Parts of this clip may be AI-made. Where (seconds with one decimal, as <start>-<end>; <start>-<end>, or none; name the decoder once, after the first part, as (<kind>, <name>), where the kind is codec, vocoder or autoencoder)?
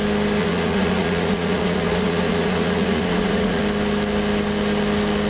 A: 0.4-3.6 (vocoder, Vocos)